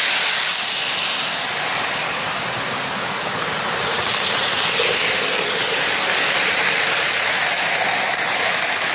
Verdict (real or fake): real